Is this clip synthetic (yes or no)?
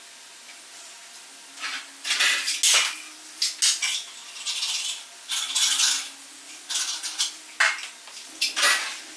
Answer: no